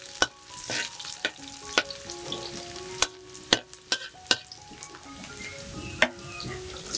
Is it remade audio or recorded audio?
recorded